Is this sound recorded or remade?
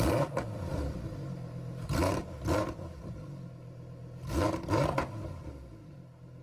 remade